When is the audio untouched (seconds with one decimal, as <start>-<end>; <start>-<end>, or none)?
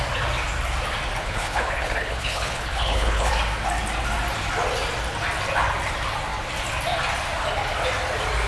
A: 0.0-1.2; 3.3-8.5